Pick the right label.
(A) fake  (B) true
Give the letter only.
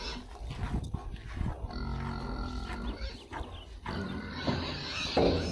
B